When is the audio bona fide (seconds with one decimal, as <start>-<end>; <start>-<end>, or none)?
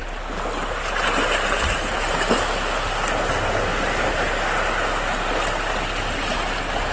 0.0-6.9